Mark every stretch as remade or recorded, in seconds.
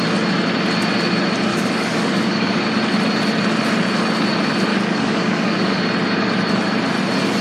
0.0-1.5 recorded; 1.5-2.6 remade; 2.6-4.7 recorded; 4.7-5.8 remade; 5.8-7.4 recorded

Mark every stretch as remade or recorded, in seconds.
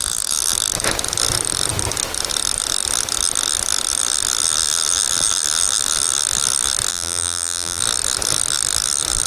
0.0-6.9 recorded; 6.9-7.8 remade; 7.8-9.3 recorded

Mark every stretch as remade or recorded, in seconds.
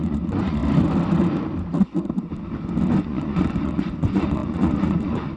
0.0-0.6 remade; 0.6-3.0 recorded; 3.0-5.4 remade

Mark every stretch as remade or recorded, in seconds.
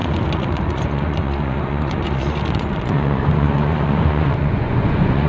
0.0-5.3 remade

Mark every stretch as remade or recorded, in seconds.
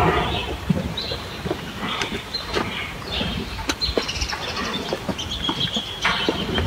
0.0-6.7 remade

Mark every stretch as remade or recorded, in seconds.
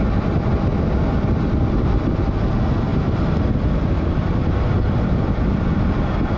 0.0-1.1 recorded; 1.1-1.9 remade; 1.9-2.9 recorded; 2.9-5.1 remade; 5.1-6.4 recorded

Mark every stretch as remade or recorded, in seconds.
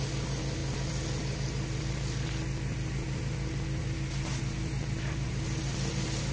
0.0-6.3 recorded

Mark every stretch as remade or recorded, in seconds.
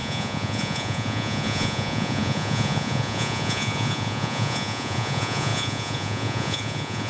0.0-7.1 remade